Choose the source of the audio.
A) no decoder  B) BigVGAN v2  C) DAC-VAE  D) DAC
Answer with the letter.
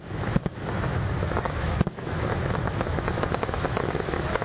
C